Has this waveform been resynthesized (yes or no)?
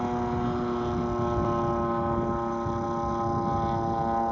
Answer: no